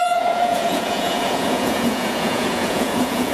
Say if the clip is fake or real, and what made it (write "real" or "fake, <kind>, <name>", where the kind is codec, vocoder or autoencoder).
fake, vocoder, Vocos